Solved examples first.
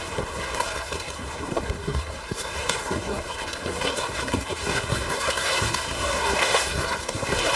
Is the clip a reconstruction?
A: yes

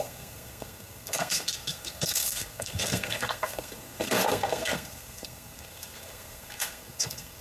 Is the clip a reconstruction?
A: yes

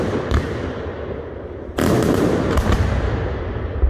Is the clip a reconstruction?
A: no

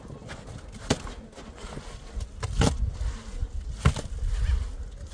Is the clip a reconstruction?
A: no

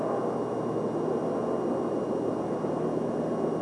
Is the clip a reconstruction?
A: no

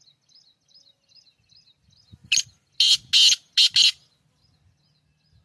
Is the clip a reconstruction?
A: no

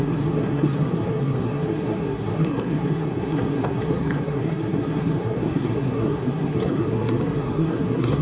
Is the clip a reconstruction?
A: yes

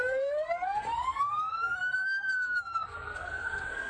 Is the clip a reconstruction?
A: yes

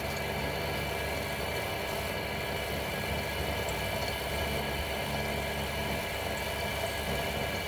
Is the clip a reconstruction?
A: no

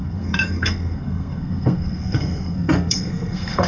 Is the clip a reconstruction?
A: yes